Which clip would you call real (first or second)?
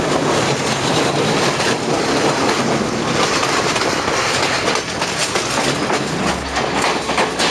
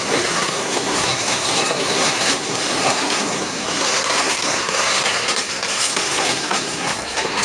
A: first